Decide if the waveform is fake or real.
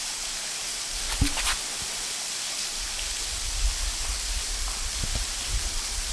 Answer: real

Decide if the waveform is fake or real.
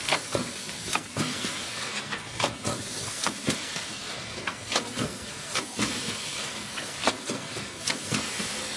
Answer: fake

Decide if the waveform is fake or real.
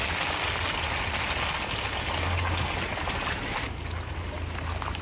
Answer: real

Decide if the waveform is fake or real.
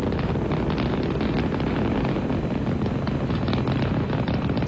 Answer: real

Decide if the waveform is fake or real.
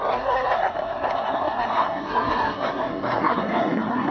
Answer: fake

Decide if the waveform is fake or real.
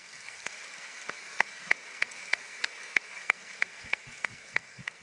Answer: fake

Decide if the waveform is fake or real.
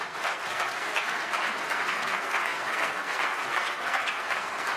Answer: fake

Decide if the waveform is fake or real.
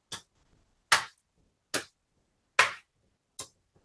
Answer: real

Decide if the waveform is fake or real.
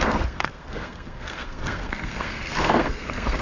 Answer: fake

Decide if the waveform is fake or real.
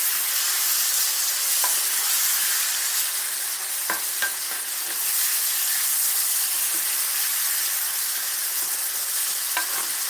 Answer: real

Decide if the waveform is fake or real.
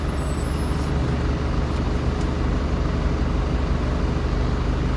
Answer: real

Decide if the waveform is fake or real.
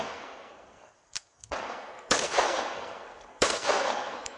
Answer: fake